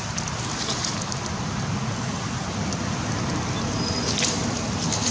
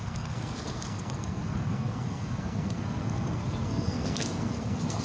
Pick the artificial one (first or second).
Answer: second